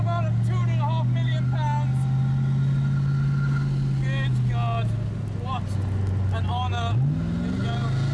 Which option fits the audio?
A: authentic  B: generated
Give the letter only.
A